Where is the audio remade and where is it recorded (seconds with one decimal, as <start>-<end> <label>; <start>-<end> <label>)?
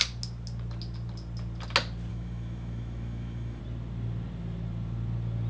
0.0-2.1 recorded; 2.1-3.6 remade; 3.6-5.5 recorded